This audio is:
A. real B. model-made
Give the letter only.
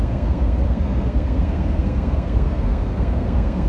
B